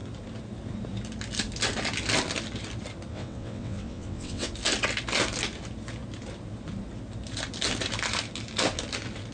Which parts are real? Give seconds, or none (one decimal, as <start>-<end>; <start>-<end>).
0.0-3.1; 4.5-9.3